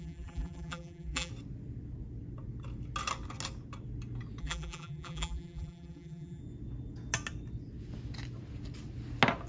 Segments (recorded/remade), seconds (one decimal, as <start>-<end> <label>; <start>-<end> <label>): 0.0-1.3 remade; 1.3-4.4 recorded; 4.4-6.4 remade; 6.4-9.5 recorded